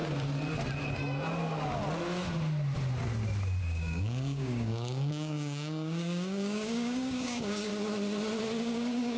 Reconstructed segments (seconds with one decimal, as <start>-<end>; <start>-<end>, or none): 3.6-7.7; 8.6-9.2